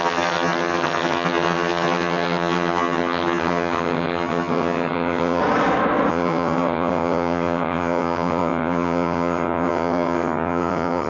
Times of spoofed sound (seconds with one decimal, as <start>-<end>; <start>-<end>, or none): 0.0-5.4; 6.1-11.1